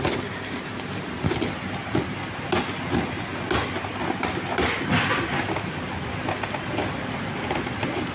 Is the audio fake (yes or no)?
no